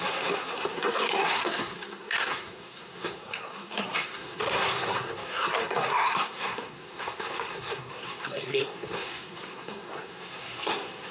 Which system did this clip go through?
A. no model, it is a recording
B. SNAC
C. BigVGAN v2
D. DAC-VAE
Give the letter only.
B